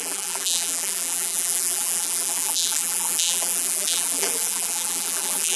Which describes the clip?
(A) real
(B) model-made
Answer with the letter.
B